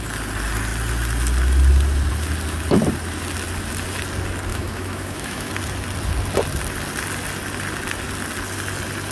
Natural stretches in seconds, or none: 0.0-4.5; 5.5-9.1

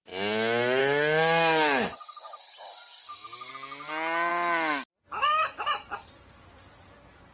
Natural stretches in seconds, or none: 0.0-0.8; 3.5-7.3

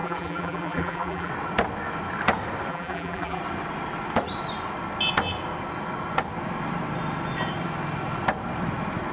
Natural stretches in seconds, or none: 1.3-2.7; 3.4-9.1

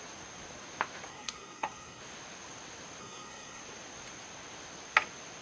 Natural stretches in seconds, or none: 0.0-1.1; 2.0-3.0; 3.6-5.4

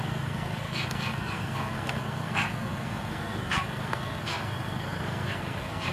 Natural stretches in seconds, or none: none

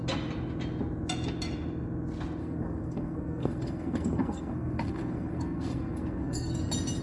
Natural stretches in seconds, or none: 0.0-2.4; 6.6-7.0